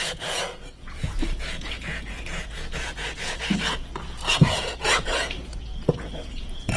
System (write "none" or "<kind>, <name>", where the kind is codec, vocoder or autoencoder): vocoder, Vocos